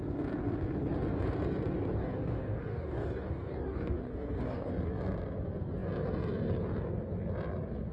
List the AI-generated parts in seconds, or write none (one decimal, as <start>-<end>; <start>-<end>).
2.0-4.7